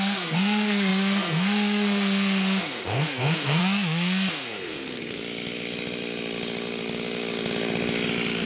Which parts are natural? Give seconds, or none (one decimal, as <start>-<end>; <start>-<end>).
3.6-4.3; 5.2-8.4